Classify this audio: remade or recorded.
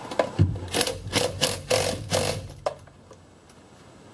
recorded